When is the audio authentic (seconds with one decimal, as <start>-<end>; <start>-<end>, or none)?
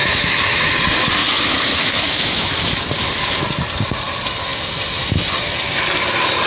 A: 0.7-1.2; 2.5-6.5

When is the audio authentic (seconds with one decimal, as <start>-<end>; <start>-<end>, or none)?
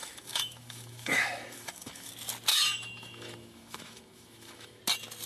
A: 2.1-2.5; 4.8-5.3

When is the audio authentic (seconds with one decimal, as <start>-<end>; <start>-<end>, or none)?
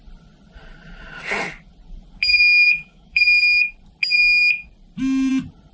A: 0.0-2.3; 3.7-5.7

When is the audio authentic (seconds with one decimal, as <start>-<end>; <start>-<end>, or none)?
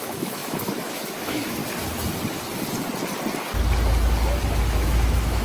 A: 1.6-4.7